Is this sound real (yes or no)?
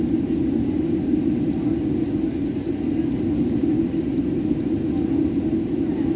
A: yes